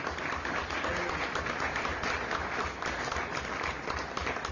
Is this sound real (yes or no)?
yes